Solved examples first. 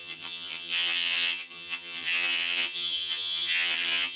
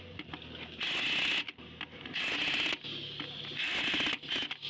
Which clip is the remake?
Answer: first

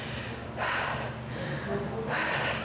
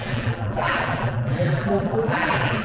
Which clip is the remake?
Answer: second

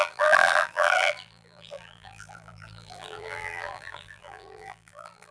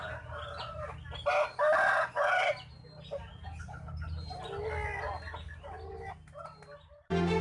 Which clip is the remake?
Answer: first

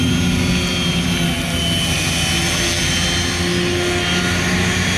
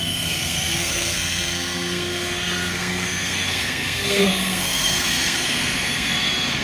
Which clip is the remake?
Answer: second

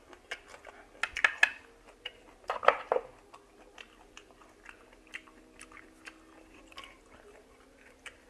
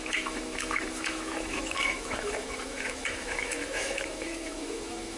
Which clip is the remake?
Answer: second